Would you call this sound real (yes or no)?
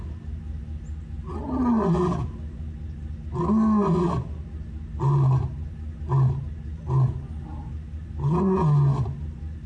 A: yes